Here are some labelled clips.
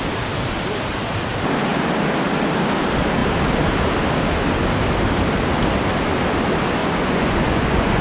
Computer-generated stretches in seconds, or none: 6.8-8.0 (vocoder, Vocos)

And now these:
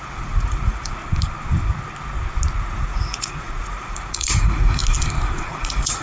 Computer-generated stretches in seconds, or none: 0.0-1.0 (vocoder, Vocos); 2.6-4.8; 5.5-6.0

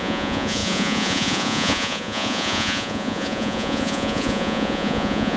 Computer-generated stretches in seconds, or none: 0.0-5.4 (vocoder, Vocos)

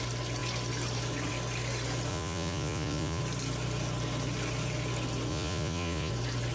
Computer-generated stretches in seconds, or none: 2.1-3.2 (vocoder, Vocos); 5.3-6.1

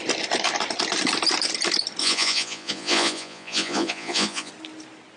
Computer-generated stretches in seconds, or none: 2.0-4.5 (vocoder, Vocos)

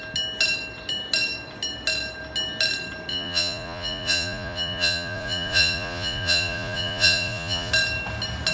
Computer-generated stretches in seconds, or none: 3.1-7.7 (vocoder, Vocos)

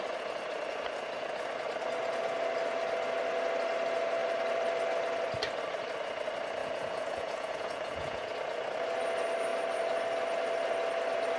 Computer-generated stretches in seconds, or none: 6.6-8.3 (vocoder, Vocos)

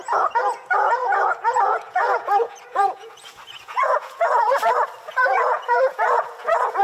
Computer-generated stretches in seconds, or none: 0.0-4.5 (vocoder, Vocos); 5.1-6.8